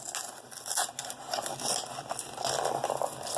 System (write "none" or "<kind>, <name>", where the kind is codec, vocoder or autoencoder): none